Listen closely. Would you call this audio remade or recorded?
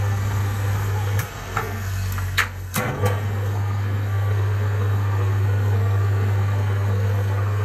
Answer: remade